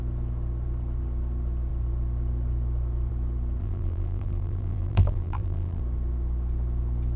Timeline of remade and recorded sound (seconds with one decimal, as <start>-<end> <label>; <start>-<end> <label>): 0.0-3.6 recorded; 3.6-5.8 remade; 5.8-7.2 recorded